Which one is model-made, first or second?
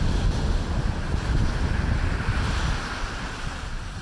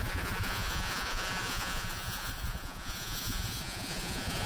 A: second